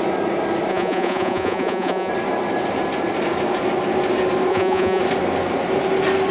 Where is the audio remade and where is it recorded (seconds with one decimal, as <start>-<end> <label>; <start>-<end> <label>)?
0.0-0.7 recorded; 0.7-2.1 remade; 2.1-4.5 recorded; 4.5-5.0 remade; 5.0-6.3 recorded